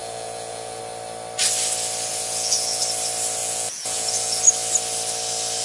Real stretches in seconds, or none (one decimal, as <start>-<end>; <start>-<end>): 0.8-2.1; 2.8-3.4; 4.4-5.6